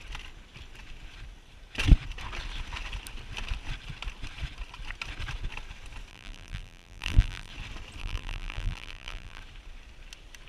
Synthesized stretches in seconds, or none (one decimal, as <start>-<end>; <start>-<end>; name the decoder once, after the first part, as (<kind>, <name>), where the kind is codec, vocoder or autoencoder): 6.1-7.5 (vocoder, BigVGAN v2); 8.0-9.4